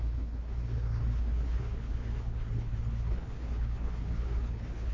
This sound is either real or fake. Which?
fake